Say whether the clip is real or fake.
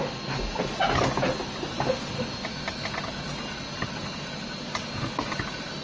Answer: real